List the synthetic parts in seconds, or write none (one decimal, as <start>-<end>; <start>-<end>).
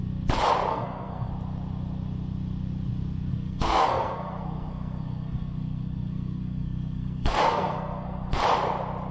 0.7-1.3; 3.3-8.4